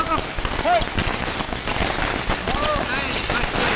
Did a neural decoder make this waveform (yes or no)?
no